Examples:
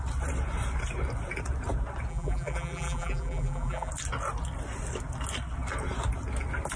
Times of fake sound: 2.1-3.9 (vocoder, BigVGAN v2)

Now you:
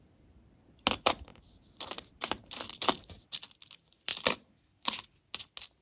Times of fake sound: 1.3-2.5 (vocoder, BigVGAN v2)

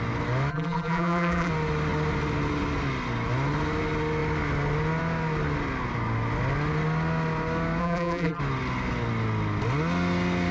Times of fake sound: 0.5-1.5 (vocoder, BigVGAN v2); 7.8-8.4

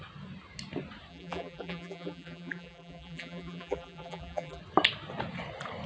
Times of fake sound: 1.1-4.6 (vocoder, BigVGAN v2)

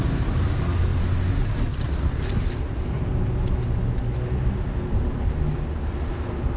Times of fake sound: none